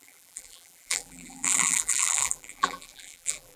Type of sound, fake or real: fake